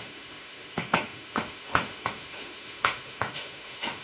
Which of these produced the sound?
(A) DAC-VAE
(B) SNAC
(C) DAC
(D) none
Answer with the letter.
A